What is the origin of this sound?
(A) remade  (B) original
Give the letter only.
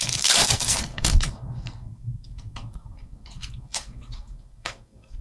A